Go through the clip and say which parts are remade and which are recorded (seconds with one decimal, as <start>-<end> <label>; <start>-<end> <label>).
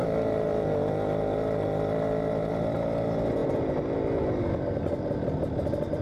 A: 0.0-6.0 recorded